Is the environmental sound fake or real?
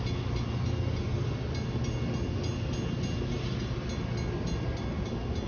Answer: real